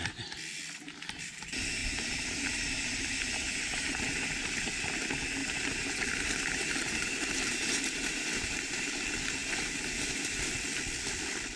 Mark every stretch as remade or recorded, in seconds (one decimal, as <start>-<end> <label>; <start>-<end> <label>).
0.0-1.8 recorded; 1.8-2.5 remade; 2.5-5.4 recorded; 5.4-8.9 remade; 8.9-9.4 recorded; 9.4-10.5 remade; 10.5-11.6 recorded